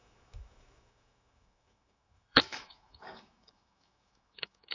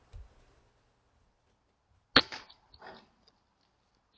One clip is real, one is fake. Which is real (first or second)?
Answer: second